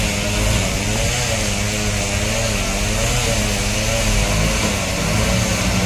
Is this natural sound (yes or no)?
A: yes